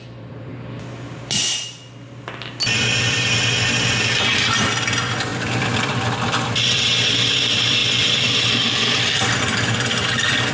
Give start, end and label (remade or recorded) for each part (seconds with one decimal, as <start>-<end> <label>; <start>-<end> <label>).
0.0-0.5 remade; 0.5-4.0 recorded; 4.0-10.5 remade